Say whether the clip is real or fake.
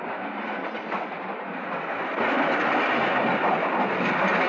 real